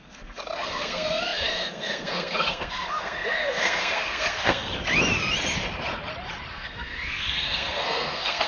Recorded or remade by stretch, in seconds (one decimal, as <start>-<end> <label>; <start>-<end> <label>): 0.0-4.7 remade; 4.7-6.5 recorded; 6.5-8.5 remade